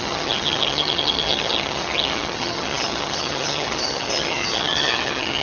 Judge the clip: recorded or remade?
remade